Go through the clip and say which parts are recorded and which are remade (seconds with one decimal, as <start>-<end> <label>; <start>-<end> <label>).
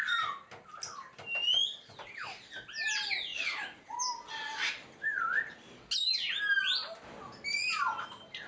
0.0-8.5 recorded